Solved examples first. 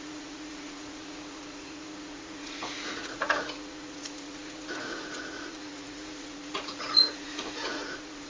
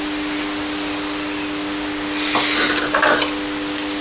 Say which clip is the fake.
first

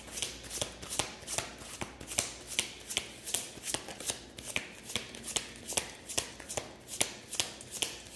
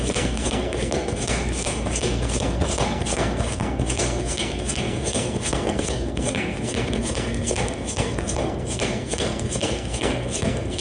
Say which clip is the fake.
second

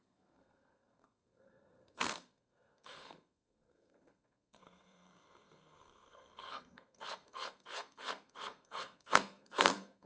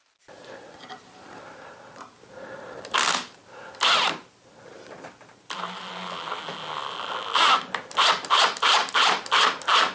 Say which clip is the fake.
first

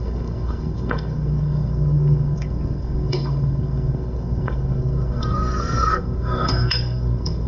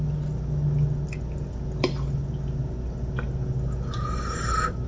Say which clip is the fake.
first